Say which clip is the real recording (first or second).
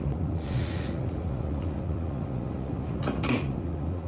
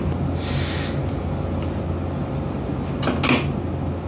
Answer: second